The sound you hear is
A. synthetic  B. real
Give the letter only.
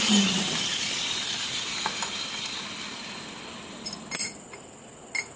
B